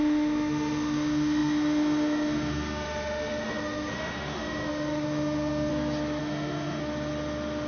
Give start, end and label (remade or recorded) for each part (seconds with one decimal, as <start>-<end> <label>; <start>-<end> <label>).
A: 0.0-5.7 remade; 5.7-6.2 recorded; 6.2-6.8 remade; 6.8-7.7 recorded